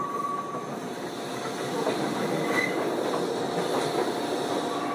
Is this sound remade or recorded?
recorded